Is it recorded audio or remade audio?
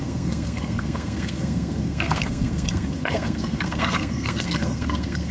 remade